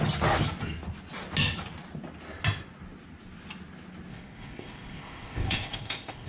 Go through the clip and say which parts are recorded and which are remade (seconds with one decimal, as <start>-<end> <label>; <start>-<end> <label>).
0.0-4.1 recorded; 4.1-6.3 remade